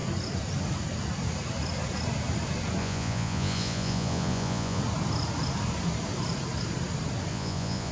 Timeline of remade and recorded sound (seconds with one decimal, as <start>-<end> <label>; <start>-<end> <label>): 0.0-2.8 recorded; 2.8-4.8 remade; 4.8-7.3 recorded; 7.3-7.9 remade